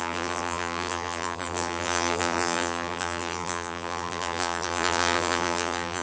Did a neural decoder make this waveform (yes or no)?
yes